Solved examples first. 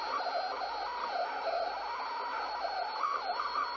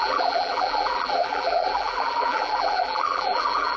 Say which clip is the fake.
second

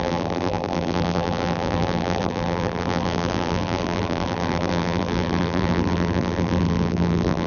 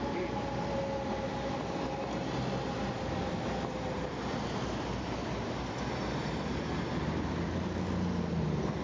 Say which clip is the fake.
first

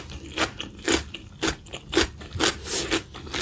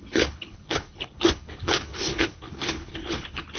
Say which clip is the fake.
second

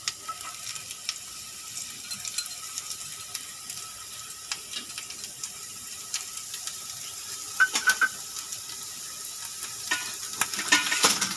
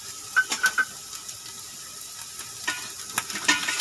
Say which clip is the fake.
first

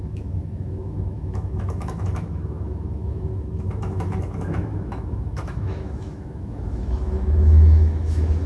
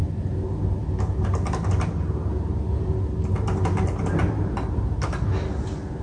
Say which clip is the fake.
first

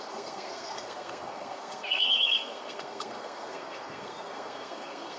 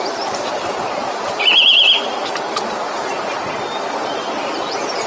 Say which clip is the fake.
first